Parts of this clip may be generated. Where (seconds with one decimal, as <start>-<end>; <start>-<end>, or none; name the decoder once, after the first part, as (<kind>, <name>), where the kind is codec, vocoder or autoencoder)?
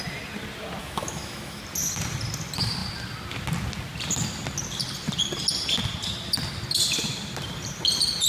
0.8-1.6 (autoencoder, DAC-VAE)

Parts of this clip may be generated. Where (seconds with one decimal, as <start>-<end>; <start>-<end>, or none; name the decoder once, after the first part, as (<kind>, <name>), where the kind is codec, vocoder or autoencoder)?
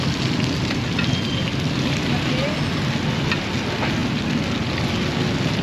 none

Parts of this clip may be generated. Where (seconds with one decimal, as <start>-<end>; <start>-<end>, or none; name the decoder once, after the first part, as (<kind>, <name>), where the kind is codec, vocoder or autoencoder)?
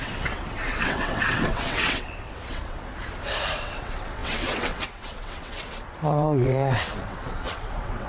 0.0-2.9 (vocoder, WaveNeXt); 3.6-8.1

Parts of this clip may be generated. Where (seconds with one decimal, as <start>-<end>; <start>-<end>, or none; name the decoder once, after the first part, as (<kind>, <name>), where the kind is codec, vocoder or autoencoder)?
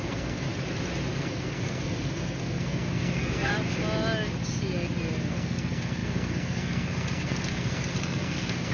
0.0-0.5 (codec, SNAC); 1.1-3.5; 5.3-8.7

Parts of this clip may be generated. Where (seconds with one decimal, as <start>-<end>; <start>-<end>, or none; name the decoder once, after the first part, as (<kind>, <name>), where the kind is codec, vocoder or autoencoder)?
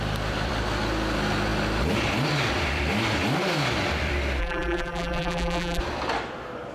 4.4-5.8 (vocoder, BigVGAN v2)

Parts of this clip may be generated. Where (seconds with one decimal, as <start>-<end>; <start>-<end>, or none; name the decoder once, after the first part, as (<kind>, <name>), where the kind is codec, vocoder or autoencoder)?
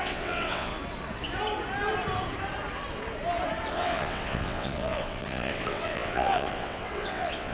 0.0-0.7 (vocoder, WaveNeXt); 3.7-7.5